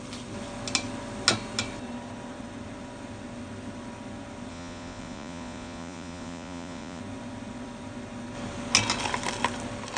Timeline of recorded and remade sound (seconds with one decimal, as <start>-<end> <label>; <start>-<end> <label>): 0.0-4.5 recorded; 4.5-7.0 remade; 7.0-10.0 recorded